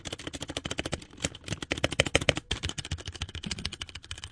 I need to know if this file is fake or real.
real